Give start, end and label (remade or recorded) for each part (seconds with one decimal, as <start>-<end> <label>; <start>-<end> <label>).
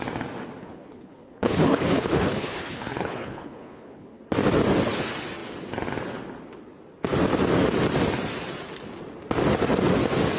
0.0-0.6 recorded; 0.6-4.2 remade; 4.2-10.4 recorded